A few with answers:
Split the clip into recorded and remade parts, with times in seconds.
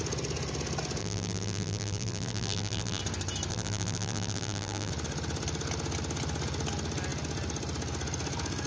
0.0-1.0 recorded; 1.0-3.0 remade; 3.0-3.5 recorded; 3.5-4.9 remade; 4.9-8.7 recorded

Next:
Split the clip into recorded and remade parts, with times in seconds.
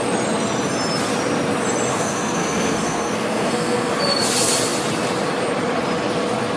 0.0-1.9 recorded; 1.9-3.9 remade; 3.9-6.6 recorded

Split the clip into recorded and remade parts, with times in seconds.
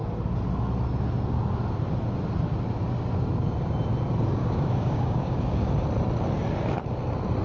0.0-4.4 recorded; 4.4-5.7 remade; 5.7-7.4 recorded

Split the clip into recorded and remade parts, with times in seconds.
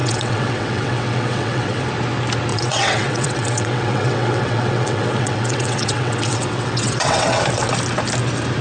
0.0-1.9 remade; 1.9-2.5 recorded; 2.5-7.4 remade; 7.4-8.6 recorded